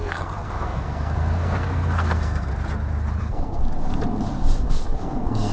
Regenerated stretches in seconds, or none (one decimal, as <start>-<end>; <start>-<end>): 0.0-2.5; 3.2-3.6; 4.7-5.5